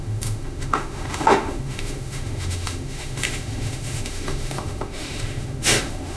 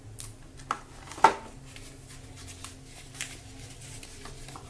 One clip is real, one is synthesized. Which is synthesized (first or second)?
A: first